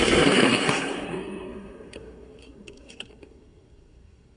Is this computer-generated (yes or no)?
yes